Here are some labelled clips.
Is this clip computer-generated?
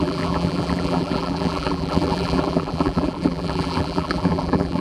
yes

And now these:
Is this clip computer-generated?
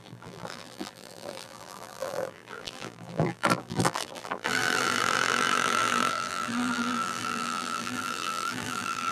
yes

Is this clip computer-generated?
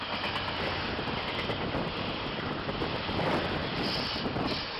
no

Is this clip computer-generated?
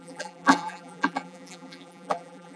yes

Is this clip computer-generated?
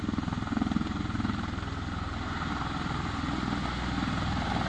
no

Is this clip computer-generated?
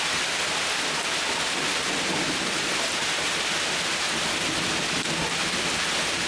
no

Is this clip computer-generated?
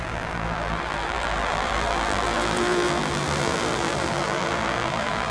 yes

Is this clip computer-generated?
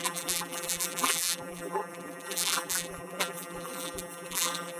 yes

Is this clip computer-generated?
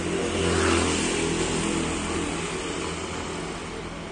no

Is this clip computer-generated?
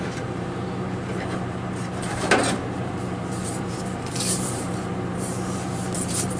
yes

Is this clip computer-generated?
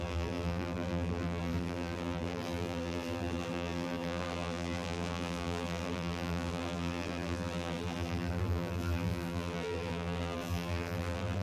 yes